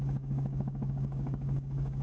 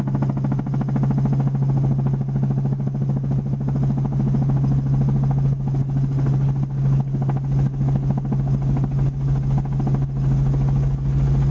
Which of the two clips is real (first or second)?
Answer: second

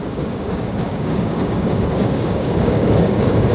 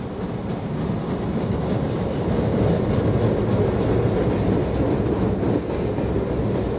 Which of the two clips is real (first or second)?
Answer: second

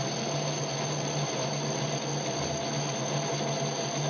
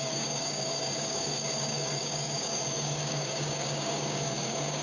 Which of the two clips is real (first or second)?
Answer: first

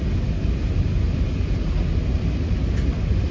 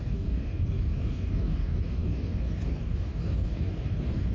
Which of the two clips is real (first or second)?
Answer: first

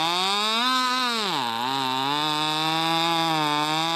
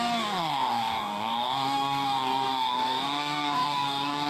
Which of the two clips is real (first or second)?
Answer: first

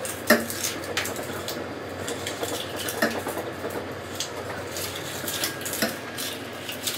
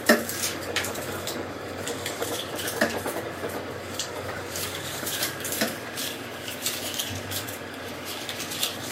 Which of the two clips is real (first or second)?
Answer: first